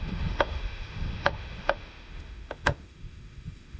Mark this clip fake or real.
fake